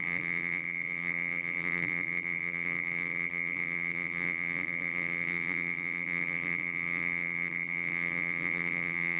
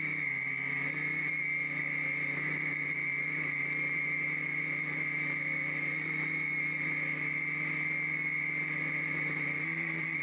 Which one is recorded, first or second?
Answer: second